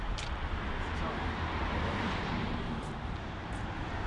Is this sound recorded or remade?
remade